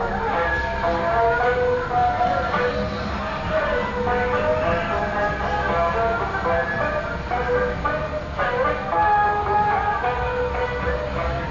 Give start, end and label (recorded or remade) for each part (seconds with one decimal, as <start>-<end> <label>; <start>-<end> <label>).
0.0-11.5 recorded